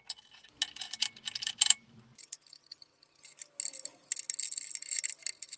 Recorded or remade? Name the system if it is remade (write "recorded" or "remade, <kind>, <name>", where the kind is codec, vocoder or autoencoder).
recorded